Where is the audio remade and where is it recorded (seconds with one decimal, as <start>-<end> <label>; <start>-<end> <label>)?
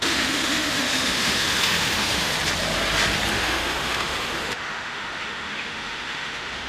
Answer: 0.0-2.3 remade; 2.3-3.3 recorded; 3.3-6.7 remade